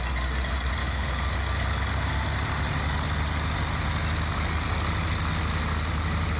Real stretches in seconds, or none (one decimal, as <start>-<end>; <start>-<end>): 0.0-0.8; 1.3-6.4